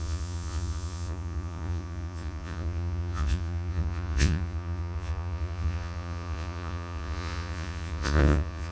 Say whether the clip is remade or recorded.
remade